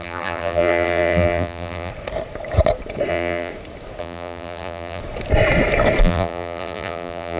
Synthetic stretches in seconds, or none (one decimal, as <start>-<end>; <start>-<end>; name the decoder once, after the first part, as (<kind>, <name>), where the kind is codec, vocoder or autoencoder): 0.0-1.9 (vocoder, BigVGAN v2); 3.1-3.5; 4.0-5.0; 6.0-7.4